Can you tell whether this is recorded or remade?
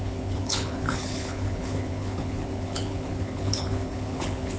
remade